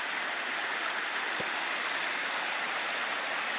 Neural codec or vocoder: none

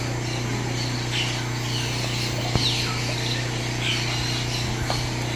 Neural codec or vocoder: none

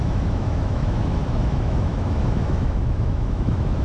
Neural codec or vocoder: autoencoder, DAC-VAE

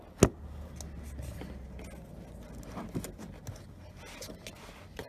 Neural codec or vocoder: none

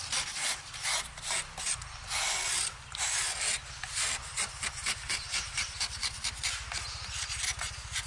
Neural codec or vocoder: none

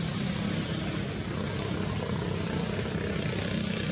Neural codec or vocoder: none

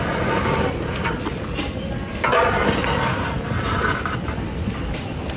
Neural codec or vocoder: none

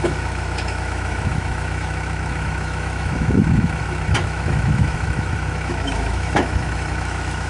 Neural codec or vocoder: autoencoder, DAC-VAE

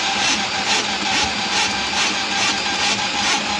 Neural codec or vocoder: none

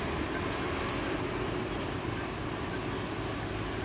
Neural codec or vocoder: none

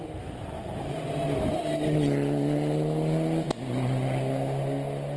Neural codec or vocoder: none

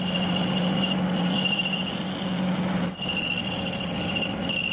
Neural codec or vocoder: none